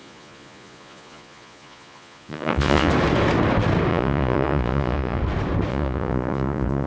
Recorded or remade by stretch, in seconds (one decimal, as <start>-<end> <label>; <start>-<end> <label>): 0.0-2.9 remade; 2.9-3.9 recorded; 3.9-5.2 remade; 5.2-5.7 recorded; 5.7-6.9 remade